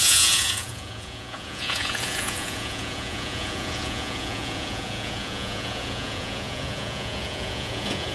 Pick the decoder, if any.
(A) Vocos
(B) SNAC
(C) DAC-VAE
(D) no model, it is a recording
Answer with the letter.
A